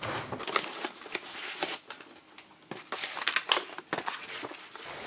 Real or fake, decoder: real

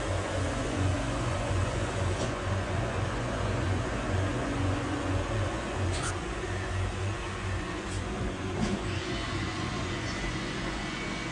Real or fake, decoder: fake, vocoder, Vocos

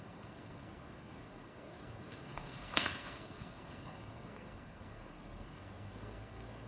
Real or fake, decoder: fake, codec, SNAC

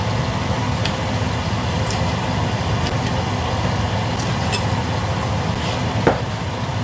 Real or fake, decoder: real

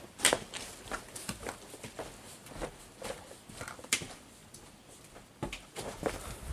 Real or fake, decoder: real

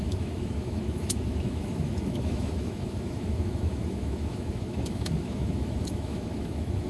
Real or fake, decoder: fake, autoencoder, DAC-VAE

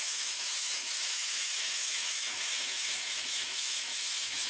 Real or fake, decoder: fake, autoencoder, DAC-VAE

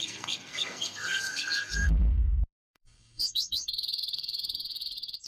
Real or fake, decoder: fake, codec, SNAC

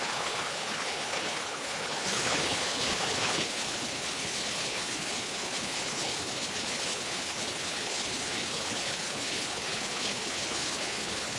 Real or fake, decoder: fake, codec, HILCodec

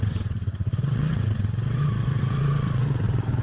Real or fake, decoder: fake, vocoder, WaveNeXt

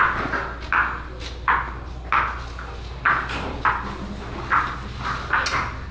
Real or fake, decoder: real